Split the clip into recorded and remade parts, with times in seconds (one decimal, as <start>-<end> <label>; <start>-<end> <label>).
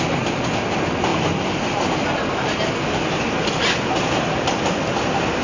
0.0-5.4 recorded